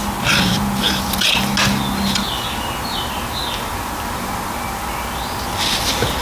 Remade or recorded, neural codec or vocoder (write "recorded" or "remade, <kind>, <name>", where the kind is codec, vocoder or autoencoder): recorded